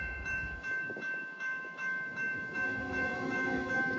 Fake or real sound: fake